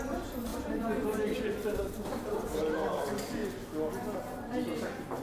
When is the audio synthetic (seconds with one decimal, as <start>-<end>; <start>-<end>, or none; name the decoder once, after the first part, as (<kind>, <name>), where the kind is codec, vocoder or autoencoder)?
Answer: 0.5-2.5 (vocoder, BigVGAN v2)